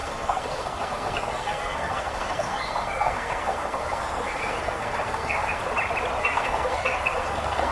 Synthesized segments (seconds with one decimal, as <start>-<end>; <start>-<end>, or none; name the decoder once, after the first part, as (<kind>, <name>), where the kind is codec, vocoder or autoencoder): 0.0-5.6 (codec, SNAC); 6.2-7.7